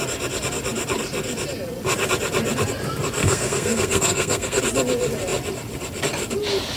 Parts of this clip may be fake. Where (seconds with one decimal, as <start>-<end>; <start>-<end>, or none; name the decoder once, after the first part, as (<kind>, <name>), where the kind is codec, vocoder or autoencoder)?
3.2-4.6 (codec, SNAC)